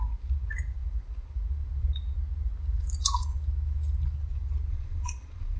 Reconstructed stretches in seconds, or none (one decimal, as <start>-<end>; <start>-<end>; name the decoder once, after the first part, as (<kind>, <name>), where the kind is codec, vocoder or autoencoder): 4.7-5.6 (vocoder, Vocos)